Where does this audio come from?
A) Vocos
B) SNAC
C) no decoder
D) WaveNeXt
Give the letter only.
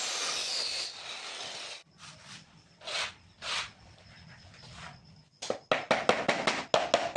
C